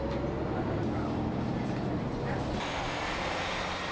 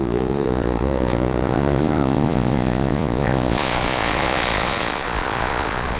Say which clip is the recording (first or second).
first